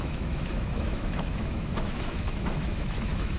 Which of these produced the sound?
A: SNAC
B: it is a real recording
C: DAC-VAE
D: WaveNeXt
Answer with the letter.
C